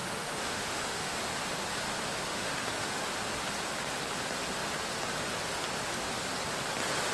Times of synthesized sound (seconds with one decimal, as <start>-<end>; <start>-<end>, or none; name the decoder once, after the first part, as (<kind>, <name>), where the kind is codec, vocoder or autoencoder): 0.0-1.2 (autoencoder, DAC-VAE); 2.3-3.0